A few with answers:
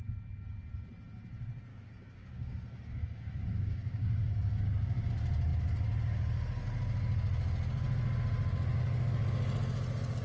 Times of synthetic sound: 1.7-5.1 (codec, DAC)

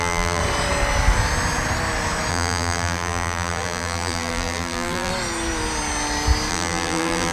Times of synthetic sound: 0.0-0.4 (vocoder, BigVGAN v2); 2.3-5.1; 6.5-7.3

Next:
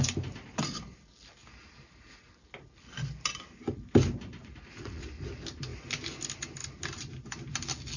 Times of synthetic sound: 4.4-5.0 (vocoder, Vocos)

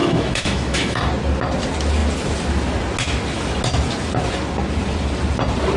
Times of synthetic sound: 0.0-1.0 (autoencoder, DAC-VAE)